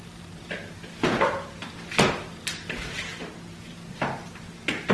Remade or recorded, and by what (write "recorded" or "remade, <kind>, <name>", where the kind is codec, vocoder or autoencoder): recorded